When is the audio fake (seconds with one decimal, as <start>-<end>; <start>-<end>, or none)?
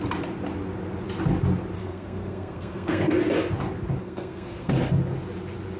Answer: 1.8-3.2; 4.0-4.7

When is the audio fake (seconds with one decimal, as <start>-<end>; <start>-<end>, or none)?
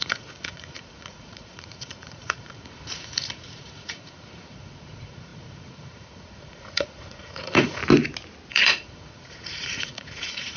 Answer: 0.0-7.8; 8.5-10.6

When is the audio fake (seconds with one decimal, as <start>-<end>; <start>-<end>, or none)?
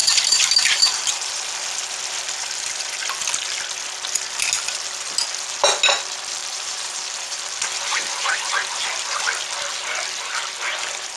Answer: 0.0-1.4; 6.4-7.4; 7.9-8.5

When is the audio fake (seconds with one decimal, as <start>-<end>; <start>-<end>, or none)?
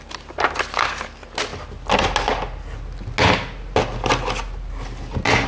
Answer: none